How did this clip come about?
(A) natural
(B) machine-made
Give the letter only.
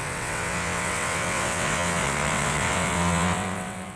B